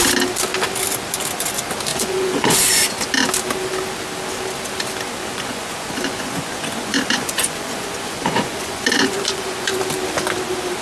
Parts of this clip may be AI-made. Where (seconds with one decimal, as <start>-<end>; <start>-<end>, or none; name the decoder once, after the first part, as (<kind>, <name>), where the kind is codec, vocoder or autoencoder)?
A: 1.9-2.9 (vocoder, Vocos); 5.2-9.8